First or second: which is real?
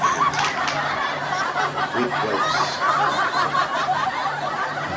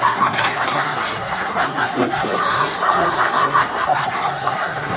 first